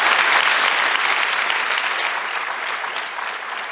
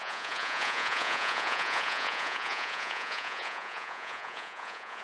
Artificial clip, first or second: second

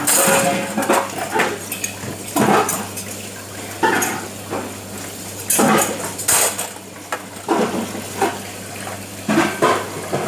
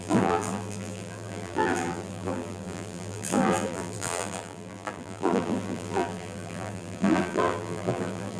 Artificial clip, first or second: second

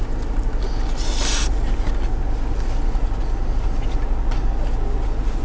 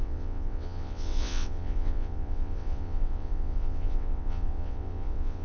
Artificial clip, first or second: second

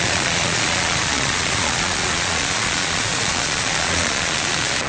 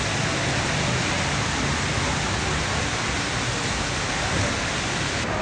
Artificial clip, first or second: first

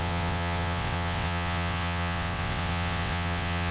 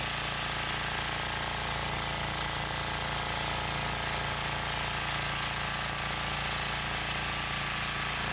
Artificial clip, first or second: first